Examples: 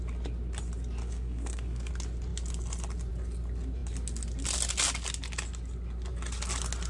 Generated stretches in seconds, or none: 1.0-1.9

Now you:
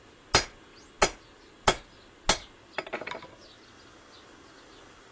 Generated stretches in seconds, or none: none

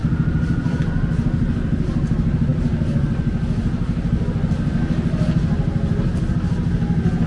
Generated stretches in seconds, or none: none

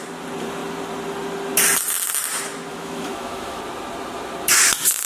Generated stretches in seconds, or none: 2.7-3.6

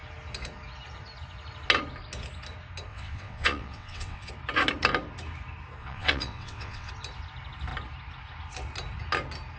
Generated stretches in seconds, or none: 2.9-4.3; 5.8-6.9

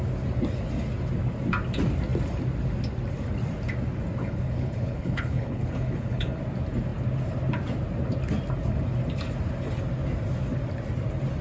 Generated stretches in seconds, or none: 4.2-6.4

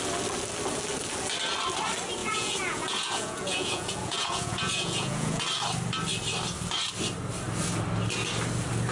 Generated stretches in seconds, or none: 2.2-5.4